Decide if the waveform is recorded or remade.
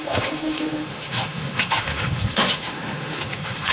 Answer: remade